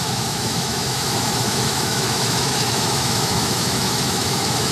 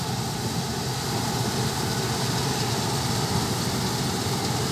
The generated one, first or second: first